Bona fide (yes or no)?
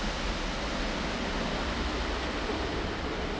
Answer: yes